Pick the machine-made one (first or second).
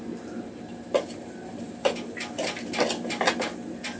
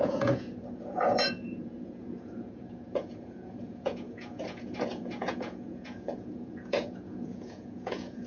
second